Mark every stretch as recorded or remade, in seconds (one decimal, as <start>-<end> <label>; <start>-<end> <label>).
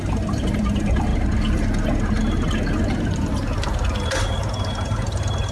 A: 0.0-1.1 remade; 1.1-4.4 recorded; 4.4-5.5 remade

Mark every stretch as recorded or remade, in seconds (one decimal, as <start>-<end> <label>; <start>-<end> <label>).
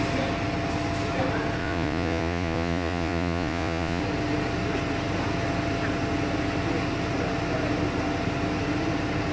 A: 0.0-1.6 recorded; 1.6-4.0 remade; 4.0-9.3 recorded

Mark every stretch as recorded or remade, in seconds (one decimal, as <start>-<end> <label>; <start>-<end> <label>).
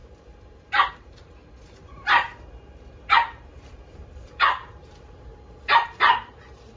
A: 0.0-0.9 recorded; 0.9-1.4 remade; 1.4-3.4 recorded; 3.4-5.3 remade; 5.3-6.0 recorded; 6.0-6.8 remade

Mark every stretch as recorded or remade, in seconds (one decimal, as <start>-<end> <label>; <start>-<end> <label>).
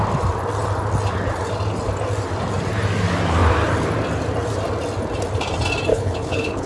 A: 0.0-5.9 recorded; 5.9-6.7 remade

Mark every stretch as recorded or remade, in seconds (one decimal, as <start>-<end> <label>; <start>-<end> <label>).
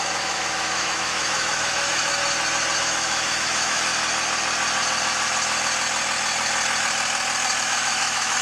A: 0.0-2.2 remade; 2.2-2.8 recorded; 2.8-3.9 remade; 3.9-7.6 recorded; 7.6-8.4 remade